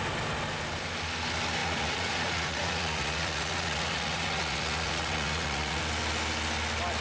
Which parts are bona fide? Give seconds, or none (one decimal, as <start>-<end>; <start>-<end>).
0.0-1.6; 5.8-7.0